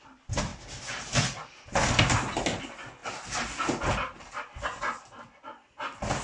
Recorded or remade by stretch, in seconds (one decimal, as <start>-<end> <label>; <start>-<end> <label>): 0.0-6.2 recorded